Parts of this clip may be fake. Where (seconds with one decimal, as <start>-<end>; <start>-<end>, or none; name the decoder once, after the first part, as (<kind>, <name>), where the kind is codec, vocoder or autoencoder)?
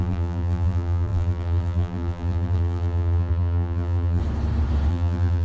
0.0-4.2 (vocoder, BigVGAN v2); 4.9-5.4